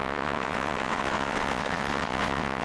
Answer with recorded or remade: remade